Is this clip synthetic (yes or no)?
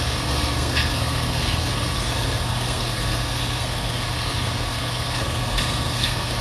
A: yes